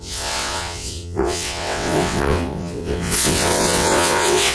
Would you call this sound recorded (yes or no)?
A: no